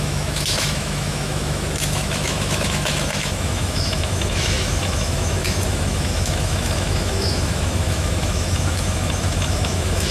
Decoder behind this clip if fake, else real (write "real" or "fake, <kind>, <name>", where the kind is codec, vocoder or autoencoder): fake, autoencoder, DAC-VAE